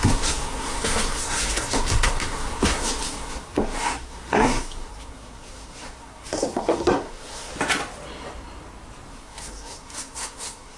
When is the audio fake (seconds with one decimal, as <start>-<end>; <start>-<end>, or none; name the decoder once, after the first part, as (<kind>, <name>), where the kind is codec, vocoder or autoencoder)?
0.0-7.5 (codec, SNAC); 9.1-10.8